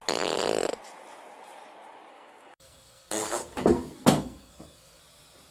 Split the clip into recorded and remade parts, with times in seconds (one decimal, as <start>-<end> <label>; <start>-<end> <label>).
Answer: 0.0-2.1 recorded; 2.1-5.0 remade; 5.0-5.5 recorded